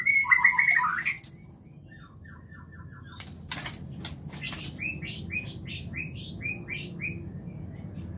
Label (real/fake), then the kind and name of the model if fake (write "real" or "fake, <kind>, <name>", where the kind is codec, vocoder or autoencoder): real